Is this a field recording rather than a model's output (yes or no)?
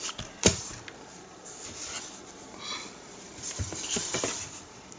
no